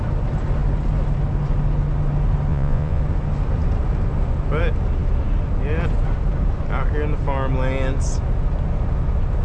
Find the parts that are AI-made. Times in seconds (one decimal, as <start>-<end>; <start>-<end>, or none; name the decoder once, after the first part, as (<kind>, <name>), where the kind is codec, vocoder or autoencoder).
2.5-3.0 (vocoder, Vocos)